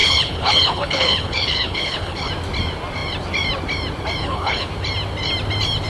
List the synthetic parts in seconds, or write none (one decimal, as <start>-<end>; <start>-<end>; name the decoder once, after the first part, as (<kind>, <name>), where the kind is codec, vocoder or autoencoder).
0.0-2.3 (codec, HILCodec); 4.2-4.7

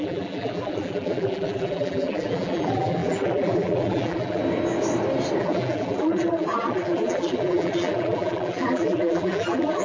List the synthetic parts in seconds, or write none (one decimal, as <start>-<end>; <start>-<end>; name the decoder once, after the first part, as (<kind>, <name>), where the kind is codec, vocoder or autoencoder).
0.0-4.4 (vocoder, BigVGAN v2); 5.4-9.8